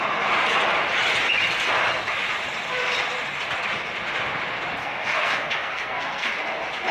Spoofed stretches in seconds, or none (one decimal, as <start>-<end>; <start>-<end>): 4.8-6.3